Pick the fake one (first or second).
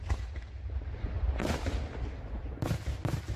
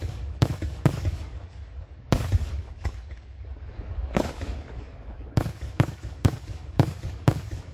second